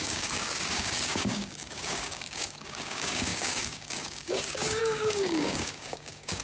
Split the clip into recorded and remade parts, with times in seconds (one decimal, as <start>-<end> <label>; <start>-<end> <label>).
0.0-6.4 remade